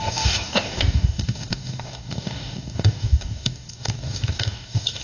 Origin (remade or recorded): remade